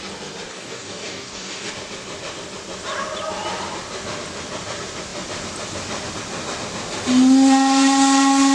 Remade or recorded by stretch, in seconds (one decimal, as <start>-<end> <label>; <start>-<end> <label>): 0.0-0.5 recorded; 0.5-1.7 remade; 1.7-8.5 recorded